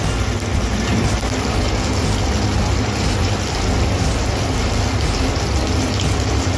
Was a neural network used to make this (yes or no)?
no